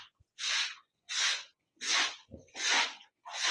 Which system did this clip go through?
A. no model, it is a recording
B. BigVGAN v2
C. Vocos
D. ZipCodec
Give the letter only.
C